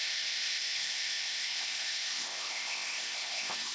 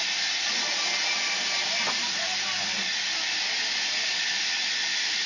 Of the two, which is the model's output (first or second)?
first